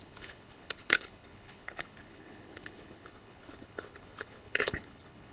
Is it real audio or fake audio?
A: fake